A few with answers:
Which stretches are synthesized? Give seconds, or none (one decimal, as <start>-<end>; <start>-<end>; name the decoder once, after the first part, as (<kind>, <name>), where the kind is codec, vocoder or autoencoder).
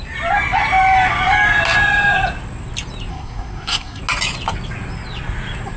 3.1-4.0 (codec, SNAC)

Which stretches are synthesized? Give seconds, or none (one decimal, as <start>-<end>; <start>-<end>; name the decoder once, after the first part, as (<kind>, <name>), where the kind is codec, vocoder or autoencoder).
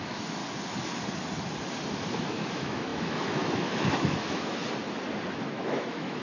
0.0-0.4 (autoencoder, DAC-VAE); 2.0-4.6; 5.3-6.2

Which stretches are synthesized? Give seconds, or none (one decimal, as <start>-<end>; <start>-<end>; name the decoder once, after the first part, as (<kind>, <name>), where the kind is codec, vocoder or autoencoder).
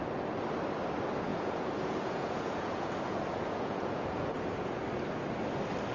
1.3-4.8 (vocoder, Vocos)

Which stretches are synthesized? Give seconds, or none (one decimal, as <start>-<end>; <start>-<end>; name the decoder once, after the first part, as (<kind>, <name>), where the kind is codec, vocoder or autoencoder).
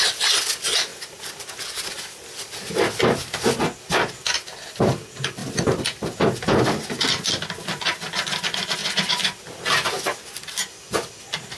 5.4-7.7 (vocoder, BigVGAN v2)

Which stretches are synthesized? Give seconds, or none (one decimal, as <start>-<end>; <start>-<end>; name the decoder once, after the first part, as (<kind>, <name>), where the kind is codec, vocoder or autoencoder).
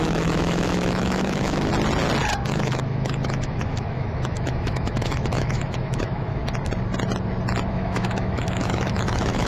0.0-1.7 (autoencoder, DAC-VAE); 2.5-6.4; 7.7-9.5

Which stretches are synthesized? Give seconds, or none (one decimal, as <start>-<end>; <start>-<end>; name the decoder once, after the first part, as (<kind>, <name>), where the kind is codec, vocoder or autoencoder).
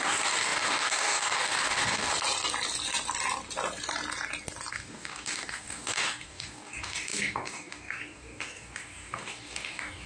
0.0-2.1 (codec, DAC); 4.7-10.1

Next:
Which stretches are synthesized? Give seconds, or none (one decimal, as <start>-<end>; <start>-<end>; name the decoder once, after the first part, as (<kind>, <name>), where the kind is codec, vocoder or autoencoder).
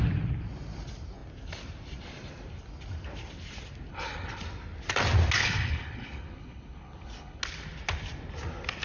3.9-4.4 (codec, HILCodec); 5.4-7.4